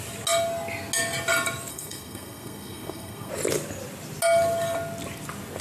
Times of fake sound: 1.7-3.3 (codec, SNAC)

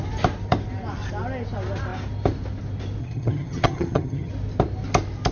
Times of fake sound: 3.0-4.3 (vocoder, HiFi-GAN)

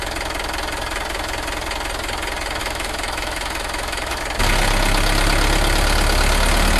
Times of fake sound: 2.6-4.2 (autoencoder, DAC-VAE)

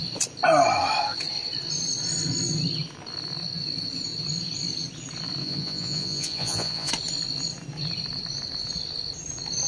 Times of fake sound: 5.4-6.9 (vocoder, Vocos)

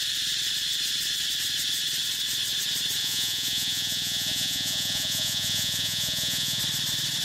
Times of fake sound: 3.0-6.6 (vocoder, Vocos)

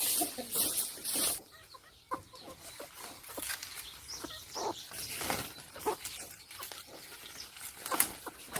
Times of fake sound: 1.3-2.0 (vocoder, BigVGAN v2)

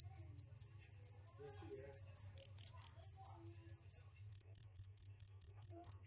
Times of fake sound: 4.3-6.1 (codec, SNAC)